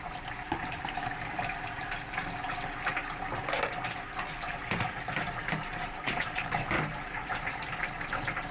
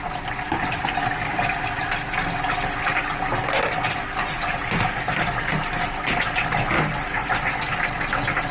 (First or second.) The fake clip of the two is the first